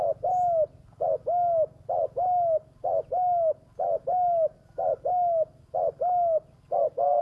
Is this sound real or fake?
real